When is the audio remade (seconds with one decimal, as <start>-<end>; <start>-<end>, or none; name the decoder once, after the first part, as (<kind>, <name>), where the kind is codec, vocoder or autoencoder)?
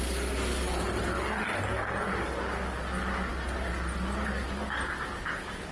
none